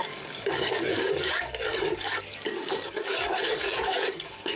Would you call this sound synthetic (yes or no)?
yes